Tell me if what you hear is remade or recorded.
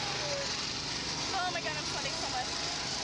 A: recorded